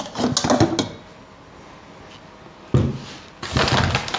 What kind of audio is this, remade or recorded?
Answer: recorded